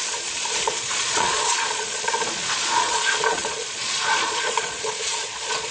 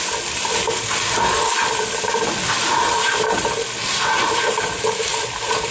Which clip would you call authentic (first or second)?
second